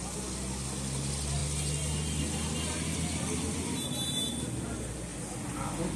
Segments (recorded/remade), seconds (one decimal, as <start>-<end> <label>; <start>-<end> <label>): 0.0-6.0 recorded